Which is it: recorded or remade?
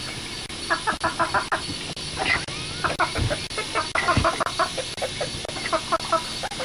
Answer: recorded